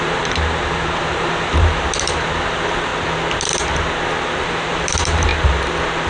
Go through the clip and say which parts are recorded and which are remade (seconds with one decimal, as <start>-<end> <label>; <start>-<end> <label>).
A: 0.0-2.9 remade; 2.9-4.4 recorded; 4.4-5.3 remade; 5.3-6.1 recorded